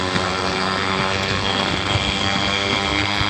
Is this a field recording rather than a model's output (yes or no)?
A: no